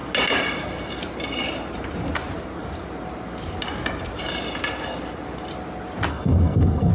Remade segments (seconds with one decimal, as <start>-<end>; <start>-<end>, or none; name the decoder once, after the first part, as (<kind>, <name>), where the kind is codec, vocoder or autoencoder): 6.1-6.9 (codec, SNAC)